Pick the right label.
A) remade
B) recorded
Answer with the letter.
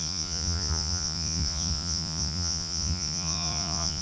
A